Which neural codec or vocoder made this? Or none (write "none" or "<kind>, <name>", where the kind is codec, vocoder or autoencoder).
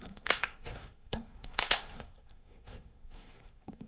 codec, SNAC